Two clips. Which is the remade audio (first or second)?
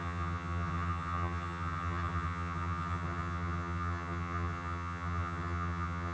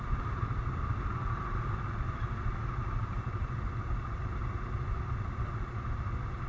first